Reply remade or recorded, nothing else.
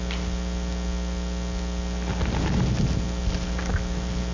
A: recorded